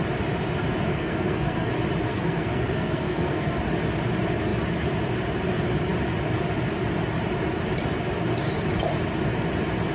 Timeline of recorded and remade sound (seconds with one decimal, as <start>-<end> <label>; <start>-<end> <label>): 0.0-0.9 recorded; 0.9-1.7 remade; 1.7-2.1 recorded; 2.1-3.6 remade; 3.6-9.9 recorded